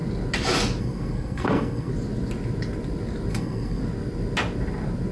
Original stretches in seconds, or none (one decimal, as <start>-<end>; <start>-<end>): 0.0-0.8; 1.9-3.3; 3.8-5.1